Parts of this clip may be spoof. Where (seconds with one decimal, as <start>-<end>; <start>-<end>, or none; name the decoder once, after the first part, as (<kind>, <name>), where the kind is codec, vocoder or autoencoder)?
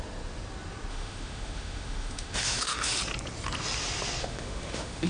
0.9-3.0 (autoencoder, DAC-VAE); 4.2-5.1